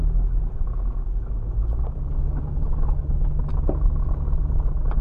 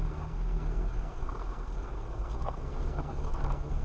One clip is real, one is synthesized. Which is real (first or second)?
first